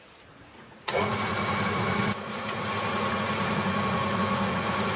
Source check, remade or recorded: remade